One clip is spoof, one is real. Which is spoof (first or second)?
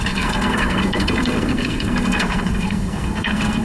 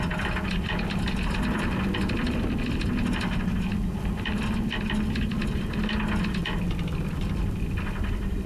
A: first